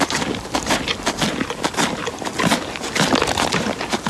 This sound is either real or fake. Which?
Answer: real